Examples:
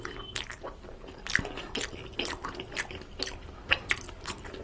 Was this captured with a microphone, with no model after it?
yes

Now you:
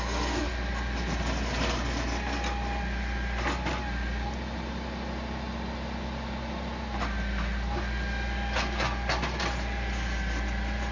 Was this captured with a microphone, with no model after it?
yes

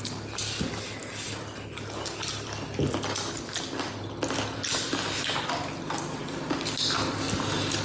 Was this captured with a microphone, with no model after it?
yes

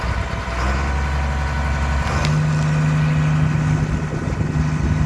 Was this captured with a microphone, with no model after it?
yes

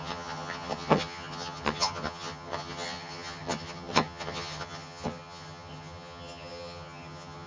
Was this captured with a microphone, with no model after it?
no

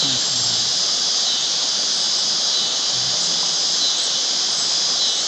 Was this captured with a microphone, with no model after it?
yes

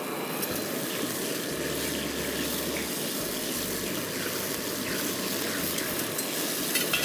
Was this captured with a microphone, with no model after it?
yes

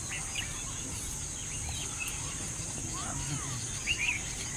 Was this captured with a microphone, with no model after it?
yes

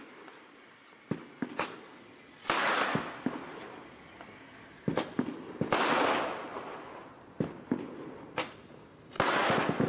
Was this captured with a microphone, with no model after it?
yes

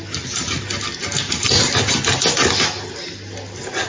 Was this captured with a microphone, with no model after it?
yes